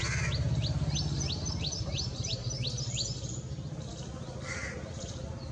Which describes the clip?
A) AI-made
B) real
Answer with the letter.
B